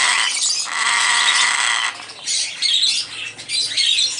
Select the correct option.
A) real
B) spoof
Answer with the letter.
A